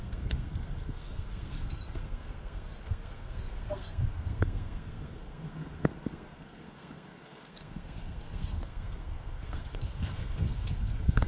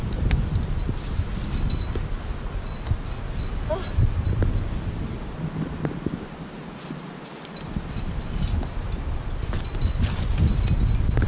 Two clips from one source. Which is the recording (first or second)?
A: second